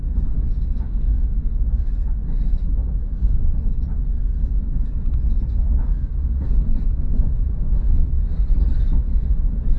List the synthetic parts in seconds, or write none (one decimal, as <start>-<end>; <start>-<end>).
7.5-8.1